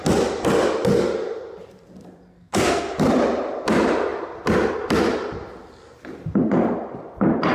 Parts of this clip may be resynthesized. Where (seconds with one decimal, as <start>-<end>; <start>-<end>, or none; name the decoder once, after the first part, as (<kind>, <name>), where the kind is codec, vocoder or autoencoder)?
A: 2.3-2.9 (codec, SNAC)